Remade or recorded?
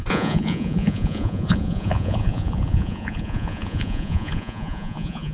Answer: remade